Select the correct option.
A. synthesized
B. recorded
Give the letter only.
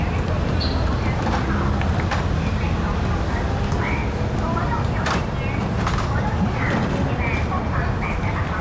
B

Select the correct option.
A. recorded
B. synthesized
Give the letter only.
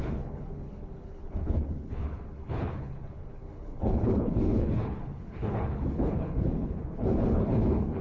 B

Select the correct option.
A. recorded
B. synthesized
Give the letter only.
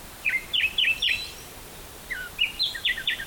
B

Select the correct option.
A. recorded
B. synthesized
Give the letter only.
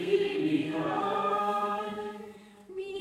B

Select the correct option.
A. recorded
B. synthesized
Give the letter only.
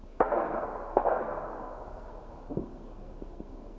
B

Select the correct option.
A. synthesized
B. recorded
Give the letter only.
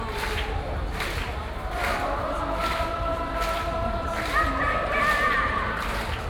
B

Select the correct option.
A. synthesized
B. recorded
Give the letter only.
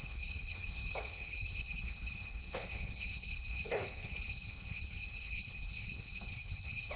A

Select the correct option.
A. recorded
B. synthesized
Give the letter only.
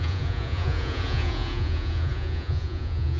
B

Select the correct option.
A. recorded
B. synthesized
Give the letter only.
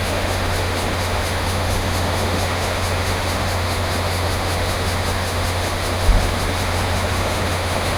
B